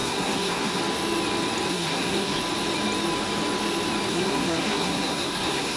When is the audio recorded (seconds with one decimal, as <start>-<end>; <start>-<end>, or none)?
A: 0.8-1.7; 2.4-4.1